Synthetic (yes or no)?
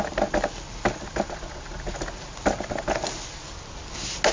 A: no